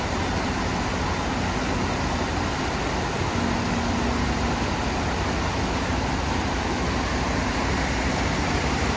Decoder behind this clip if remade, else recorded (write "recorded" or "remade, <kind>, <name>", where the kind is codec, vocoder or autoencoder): recorded